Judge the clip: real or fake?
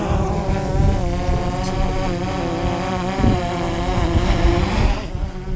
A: real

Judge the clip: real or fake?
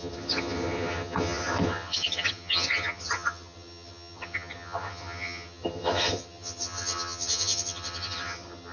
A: fake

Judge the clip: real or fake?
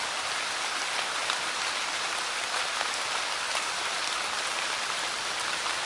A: real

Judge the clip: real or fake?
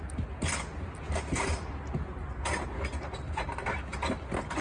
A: real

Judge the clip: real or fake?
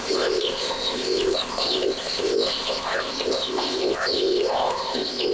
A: fake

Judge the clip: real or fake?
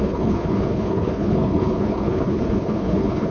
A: fake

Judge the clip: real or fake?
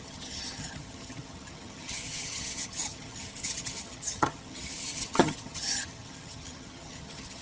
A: fake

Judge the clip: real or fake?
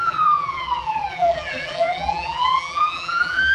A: fake